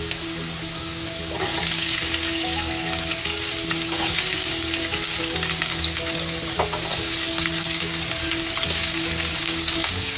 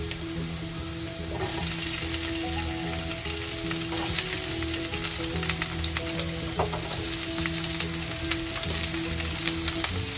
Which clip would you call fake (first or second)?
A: first